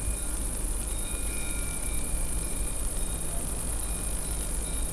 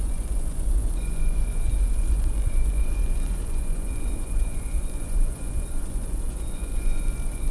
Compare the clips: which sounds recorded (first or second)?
first